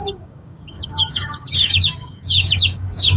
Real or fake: fake